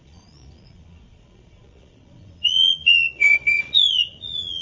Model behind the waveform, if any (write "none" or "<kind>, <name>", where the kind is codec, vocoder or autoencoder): vocoder, Vocos